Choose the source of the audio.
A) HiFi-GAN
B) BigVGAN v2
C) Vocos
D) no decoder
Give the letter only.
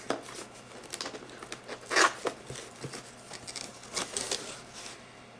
D